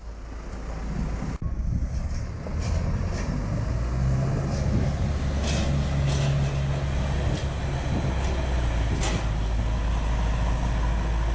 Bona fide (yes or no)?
yes